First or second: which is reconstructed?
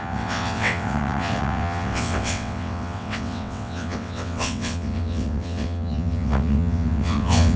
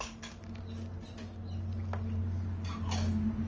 first